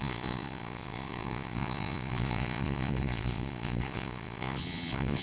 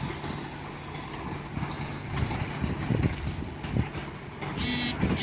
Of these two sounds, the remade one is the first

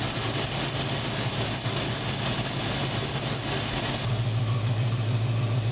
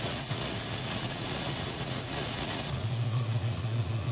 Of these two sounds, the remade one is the second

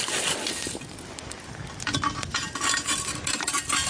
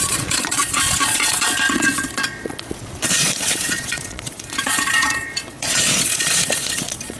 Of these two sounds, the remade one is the second